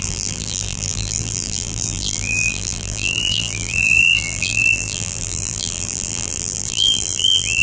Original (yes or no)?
no